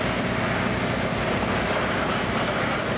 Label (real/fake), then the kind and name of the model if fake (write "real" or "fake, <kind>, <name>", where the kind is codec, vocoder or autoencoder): real